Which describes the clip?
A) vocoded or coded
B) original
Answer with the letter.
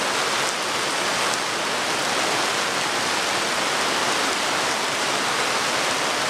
B